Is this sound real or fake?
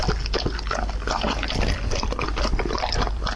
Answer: real